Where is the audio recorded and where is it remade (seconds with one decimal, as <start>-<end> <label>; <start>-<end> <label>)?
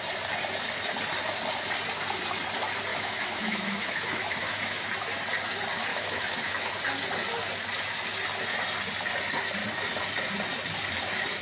0.0-2.9 recorded; 2.9-4.8 remade; 4.8-5.9 recorded; 5.9-6.7 remade; 6.7-11.4 recorded